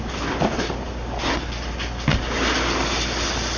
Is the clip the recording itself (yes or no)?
yes